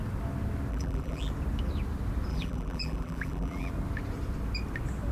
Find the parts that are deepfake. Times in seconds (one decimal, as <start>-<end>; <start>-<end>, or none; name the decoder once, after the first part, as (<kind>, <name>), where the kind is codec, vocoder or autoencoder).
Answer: 0.7-1.3 (vocoder, BigVGAN v2); 2.3-3.7